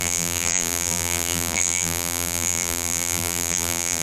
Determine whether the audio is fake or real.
fake